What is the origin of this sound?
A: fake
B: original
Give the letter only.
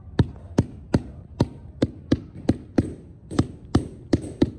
B